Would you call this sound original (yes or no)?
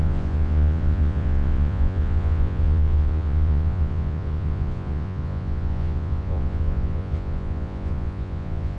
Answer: no